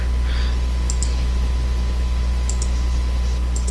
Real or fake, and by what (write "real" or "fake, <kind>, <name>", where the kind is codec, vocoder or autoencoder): real